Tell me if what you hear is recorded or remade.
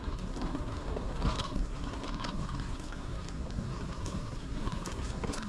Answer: remade